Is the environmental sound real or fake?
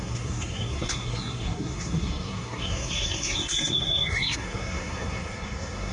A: fake